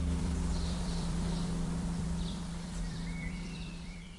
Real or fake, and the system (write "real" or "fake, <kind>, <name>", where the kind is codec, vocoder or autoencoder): fake, vocoder, BigVGAN v2